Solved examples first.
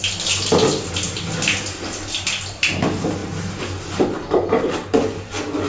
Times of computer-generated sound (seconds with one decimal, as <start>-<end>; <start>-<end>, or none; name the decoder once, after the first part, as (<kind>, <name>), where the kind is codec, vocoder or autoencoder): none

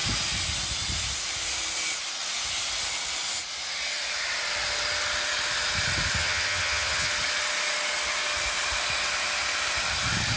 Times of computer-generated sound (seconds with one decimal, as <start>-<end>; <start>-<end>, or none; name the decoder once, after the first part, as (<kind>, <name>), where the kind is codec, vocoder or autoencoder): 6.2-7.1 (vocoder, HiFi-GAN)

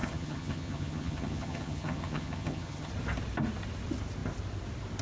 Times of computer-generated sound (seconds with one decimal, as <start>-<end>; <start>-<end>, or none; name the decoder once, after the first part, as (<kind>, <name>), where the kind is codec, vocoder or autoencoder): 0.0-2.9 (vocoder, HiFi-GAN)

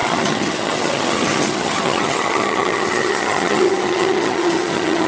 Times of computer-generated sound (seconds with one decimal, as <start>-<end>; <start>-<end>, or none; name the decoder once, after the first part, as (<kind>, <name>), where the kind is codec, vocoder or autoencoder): 0.0-5.1 (vocoder, HiFi-GAN)